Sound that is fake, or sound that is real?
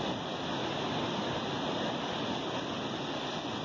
real